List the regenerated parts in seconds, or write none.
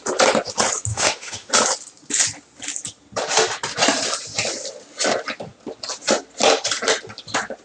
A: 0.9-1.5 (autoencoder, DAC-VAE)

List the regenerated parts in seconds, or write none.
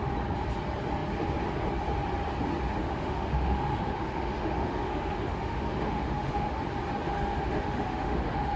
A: 2.8-6.6 (autoencoder, DAC-VAE); 7.4-8.6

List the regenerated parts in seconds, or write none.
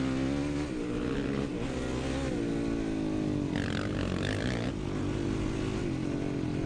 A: none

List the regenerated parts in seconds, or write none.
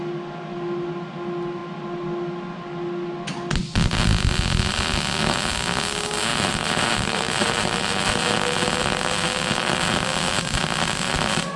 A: 6.3-8.2 (vocoder, BigVGAN v2)